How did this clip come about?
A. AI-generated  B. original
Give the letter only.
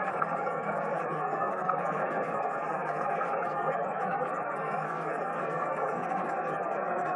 A